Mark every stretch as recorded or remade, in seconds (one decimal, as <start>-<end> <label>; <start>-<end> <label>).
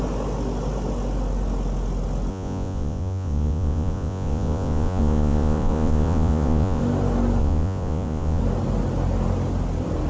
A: 0.0-2.3 recorded; 2.3-6.8 remade; 6.8-7.4 recorded; 7.4-8.4 remade; 8.4-10.1 recorded